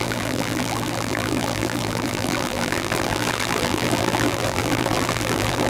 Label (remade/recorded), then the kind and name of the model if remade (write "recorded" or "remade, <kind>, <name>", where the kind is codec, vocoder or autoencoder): remade, vocoder, BigVGAN v2